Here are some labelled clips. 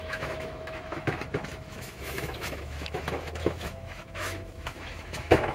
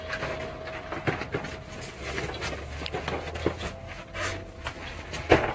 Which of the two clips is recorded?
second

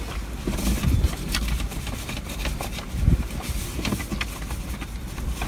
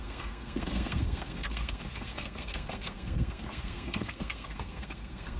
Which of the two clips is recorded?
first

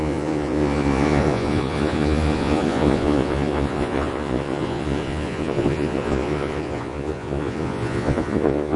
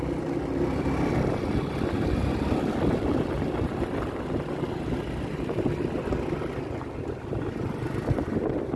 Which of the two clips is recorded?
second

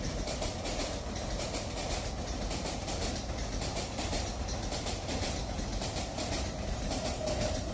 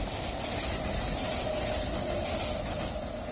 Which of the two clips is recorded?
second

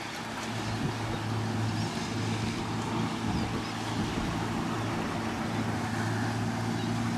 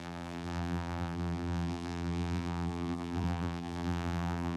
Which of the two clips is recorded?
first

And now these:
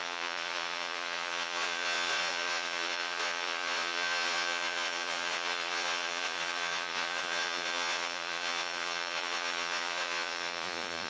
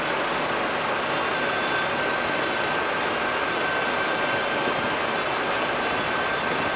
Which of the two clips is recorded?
second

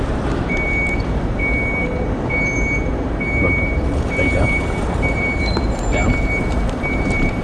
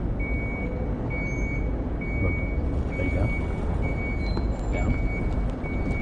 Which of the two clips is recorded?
second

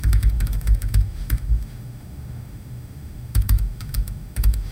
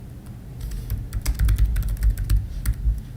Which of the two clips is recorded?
second